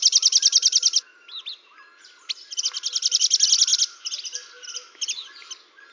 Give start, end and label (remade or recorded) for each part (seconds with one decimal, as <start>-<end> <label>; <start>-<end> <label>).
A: 0.0-5.9 recorded